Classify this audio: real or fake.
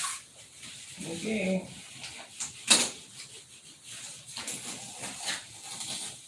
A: real